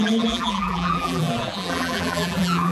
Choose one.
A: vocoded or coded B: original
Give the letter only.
A